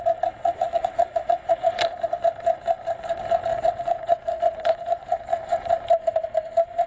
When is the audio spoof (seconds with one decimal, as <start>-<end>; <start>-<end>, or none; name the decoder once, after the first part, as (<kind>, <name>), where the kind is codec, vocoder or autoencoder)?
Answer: 0.4-1.5 (vocoder, WaveNeXt); 3.5-5.7